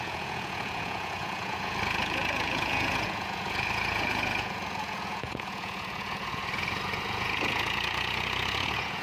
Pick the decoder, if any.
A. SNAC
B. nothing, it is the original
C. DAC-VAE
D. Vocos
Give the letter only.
D